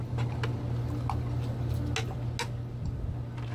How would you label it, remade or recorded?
recorded